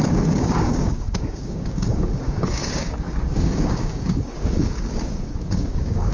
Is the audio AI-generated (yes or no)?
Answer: yes